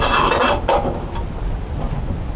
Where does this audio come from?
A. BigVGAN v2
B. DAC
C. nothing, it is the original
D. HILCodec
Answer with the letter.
C